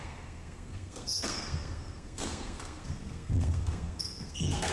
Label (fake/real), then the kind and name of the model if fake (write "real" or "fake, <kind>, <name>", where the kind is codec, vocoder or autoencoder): fake, codec, SNAC